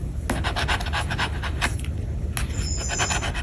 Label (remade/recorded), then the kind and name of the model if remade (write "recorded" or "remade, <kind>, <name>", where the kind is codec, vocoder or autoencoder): recorded